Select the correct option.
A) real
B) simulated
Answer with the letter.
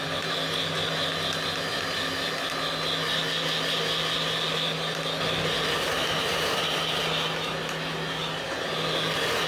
A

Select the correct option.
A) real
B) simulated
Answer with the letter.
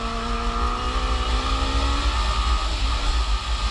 A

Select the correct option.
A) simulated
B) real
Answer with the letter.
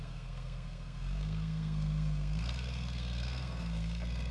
A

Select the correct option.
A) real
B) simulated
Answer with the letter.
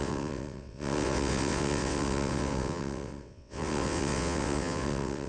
B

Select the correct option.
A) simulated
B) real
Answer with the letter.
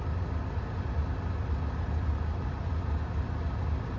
B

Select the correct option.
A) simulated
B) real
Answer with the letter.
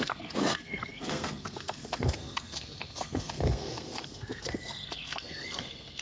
A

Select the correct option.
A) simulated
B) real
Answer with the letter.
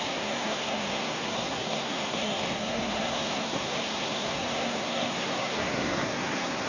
A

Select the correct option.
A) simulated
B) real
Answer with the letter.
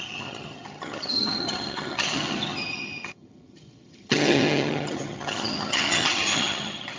A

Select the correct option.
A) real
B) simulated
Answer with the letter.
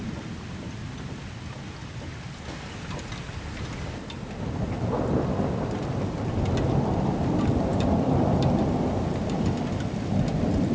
A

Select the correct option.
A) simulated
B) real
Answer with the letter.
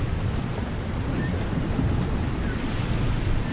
B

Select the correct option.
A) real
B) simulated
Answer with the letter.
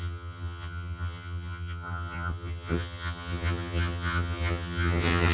B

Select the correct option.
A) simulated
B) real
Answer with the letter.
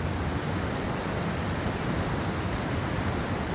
B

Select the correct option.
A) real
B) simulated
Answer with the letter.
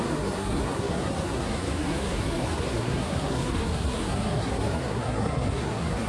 B